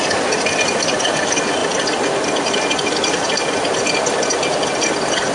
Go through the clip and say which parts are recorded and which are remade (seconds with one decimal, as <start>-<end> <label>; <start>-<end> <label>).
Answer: 0.0-5.3 recorded